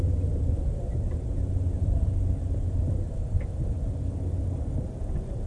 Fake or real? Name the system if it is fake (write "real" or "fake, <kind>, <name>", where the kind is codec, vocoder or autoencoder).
real